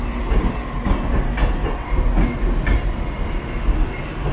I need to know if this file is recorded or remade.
recorded